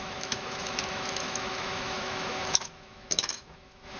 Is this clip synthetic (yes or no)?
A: yes